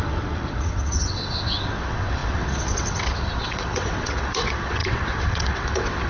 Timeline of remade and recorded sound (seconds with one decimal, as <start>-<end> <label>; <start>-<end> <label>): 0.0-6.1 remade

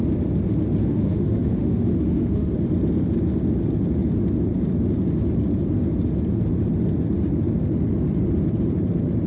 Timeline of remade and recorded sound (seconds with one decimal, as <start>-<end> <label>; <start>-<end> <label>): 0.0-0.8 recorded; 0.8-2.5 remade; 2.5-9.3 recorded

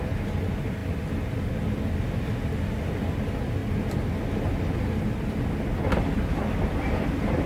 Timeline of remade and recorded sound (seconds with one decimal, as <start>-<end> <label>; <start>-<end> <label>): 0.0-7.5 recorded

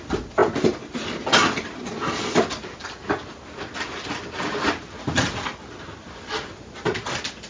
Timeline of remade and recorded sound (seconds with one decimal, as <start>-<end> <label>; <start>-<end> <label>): 0.0-7.5 recorded

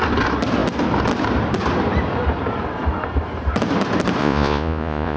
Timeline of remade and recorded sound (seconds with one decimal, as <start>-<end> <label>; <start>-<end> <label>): 0.0-4.2 recorded; 4.2-5.2 remade

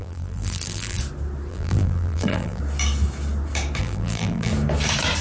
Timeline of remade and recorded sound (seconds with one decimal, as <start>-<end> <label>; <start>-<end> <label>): 0.0-1.0 remade; 1.0-1.5 recorded; 1.5-2.6 remade; 2.6-3.8 recorded; 3.8-4.5 remade; 4.5-5.2 recorded

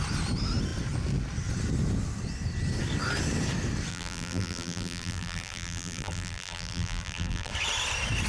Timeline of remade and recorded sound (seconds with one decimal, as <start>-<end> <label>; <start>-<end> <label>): 0.0-3.9 recorded; 3.9-7.5 remade; 7.5-8.3 recorded